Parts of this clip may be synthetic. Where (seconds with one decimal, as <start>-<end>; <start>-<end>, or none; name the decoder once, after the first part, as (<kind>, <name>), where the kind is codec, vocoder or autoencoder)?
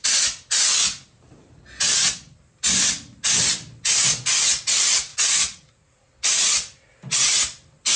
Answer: 5.1-6.1 (vocoder, Vocos)